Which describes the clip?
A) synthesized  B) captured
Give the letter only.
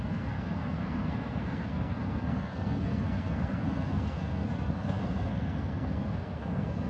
A